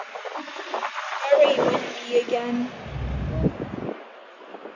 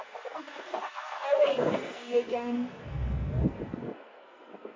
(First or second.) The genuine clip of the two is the first